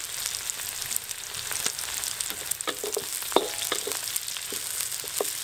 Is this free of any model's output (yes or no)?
yes